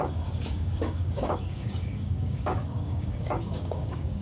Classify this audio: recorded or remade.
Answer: remade